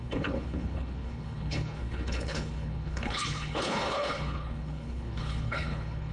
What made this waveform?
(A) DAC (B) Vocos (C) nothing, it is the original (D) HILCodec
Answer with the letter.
D